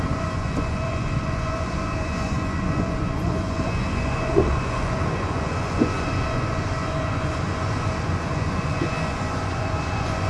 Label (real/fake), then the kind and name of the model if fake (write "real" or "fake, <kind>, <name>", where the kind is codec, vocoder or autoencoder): fake, vocoder, Vocos